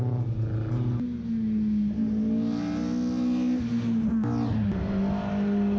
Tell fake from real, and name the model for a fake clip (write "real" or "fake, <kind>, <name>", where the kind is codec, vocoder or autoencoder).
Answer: real